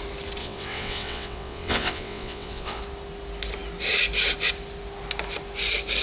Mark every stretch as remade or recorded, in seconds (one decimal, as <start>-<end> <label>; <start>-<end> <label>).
0.0-0.4 recorded; 0.4-2.8 remade; 2.8-6.0 recorded